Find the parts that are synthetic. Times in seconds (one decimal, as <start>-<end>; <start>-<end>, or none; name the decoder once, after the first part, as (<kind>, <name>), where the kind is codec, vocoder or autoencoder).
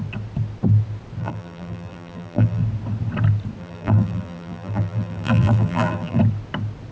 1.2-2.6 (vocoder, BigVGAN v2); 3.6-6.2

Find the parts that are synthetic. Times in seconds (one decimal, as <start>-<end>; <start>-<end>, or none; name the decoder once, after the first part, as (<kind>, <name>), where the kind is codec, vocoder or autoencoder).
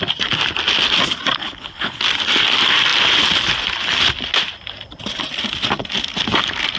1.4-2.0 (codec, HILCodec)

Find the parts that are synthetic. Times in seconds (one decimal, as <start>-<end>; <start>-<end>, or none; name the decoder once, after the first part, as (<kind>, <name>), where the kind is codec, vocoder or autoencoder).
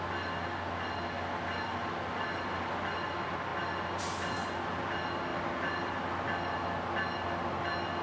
5.3-6.0 (vocoder, BigVGAN v2)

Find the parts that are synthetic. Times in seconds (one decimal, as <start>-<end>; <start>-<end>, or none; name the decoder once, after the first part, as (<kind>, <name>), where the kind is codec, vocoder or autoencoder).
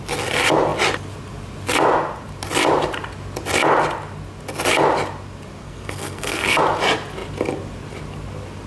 5.6-6.6 (codec, SNAC)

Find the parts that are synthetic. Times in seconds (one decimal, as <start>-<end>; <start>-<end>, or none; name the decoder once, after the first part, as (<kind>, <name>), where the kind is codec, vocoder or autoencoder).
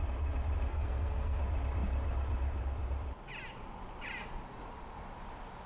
0.7-1.4 (codec, SNAC)